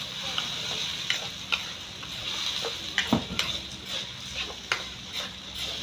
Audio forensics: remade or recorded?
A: recorded